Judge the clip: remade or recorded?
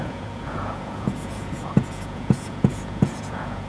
remade